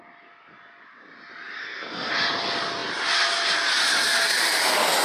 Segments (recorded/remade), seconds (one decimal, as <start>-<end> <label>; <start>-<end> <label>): 0.0-1.6 recorded; 1.6-2.1 remade; 2.1-5.0 recorded